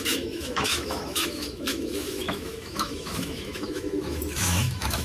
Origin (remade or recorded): remade